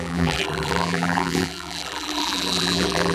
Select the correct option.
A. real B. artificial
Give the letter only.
B